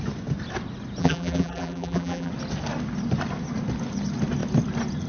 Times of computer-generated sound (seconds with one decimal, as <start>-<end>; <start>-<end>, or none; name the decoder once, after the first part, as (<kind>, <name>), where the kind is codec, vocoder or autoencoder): 1.0-2.3 (vocoder, BigVGAN v2)